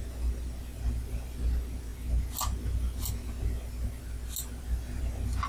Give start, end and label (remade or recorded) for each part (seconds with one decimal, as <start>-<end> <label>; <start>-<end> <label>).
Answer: 0.0-5.5 recorded